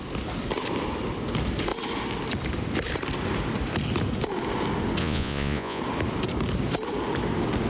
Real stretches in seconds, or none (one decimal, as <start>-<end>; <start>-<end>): 0.0-5.0; 5.8-7.7